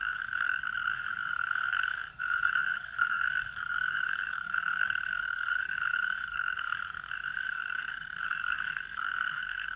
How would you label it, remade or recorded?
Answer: remade